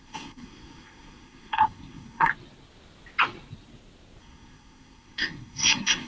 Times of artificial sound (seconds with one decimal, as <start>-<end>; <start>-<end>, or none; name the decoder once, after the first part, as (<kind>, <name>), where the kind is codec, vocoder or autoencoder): 0.0-2.3 (codec, SNAC); 4.2-6.1